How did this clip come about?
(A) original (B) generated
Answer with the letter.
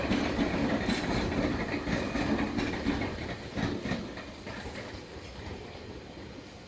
A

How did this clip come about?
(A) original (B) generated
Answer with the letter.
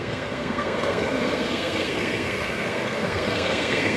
B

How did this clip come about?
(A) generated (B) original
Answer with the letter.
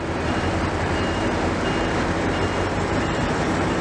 A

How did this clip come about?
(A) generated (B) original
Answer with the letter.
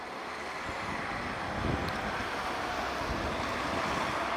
B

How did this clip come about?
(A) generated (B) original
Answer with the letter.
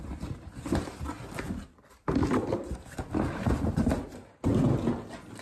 B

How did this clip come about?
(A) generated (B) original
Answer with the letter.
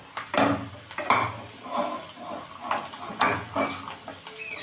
B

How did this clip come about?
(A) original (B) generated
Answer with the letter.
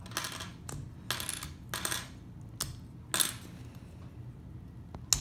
A